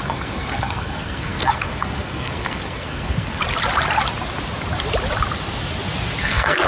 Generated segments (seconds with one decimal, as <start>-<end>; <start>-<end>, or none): 0.0-3.4; 6.2-6.7